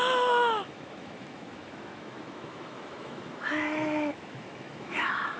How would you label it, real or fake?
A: fake